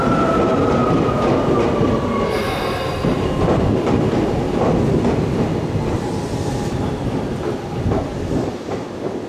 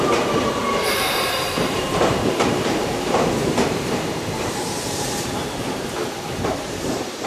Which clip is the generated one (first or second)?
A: second